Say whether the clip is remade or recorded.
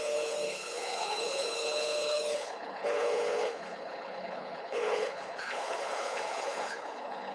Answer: remade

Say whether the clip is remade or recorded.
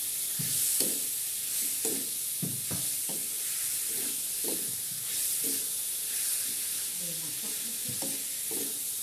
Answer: recorded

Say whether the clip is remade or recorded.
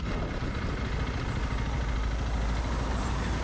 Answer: recorded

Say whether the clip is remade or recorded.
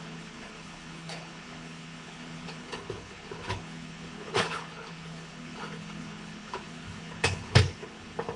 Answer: remade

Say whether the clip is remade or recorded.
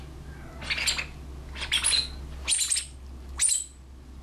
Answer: recorded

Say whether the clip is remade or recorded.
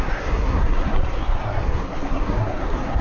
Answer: remade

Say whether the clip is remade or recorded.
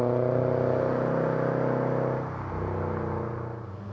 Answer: recorded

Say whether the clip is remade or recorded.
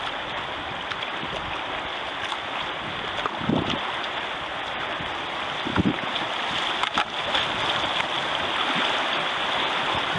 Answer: recorded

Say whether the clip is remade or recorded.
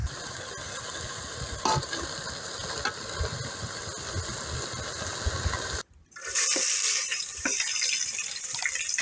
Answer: recorded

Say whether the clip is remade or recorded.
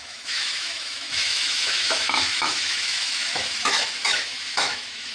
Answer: remade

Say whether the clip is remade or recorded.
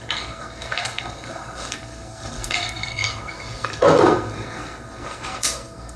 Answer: remade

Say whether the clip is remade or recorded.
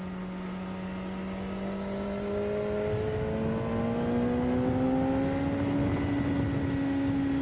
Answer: recorded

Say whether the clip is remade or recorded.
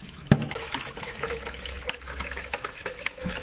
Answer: remade